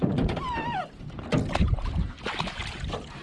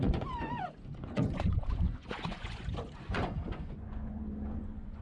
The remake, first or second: second